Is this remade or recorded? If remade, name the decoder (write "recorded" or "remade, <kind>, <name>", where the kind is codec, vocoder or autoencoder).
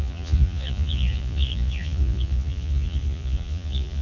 remade, vocoder, Vocos